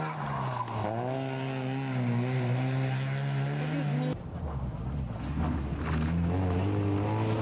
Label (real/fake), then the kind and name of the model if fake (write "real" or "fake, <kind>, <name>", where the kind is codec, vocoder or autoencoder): real